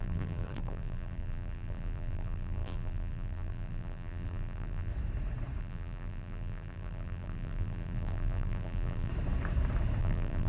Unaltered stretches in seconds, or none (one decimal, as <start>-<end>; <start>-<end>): 4.9-5.6; 9.1-10.0